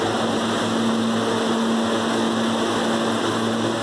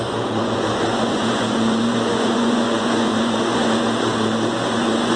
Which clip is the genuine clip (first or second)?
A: first